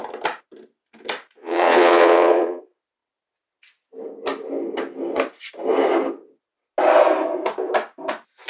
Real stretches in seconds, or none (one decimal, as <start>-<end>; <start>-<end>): 0.0-1.4; 2.6-8.5